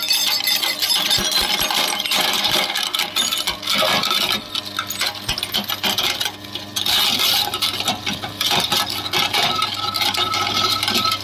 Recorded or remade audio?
recorded